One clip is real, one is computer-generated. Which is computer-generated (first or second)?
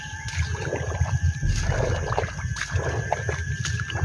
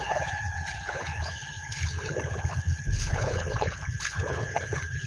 second